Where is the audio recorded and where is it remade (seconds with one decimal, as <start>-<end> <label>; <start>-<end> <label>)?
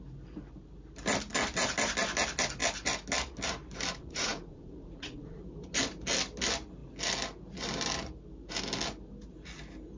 0.0-4.0 recorded; 4.0-5.4 remade; 5.4-10.0 recorded